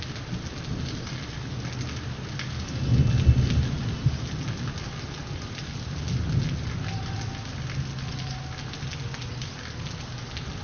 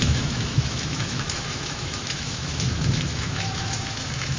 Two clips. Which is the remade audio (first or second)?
second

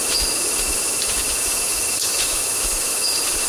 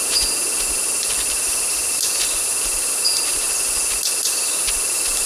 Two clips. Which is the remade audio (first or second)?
first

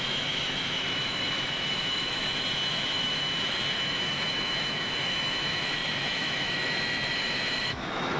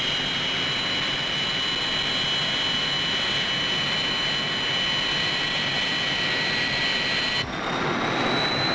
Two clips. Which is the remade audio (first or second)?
first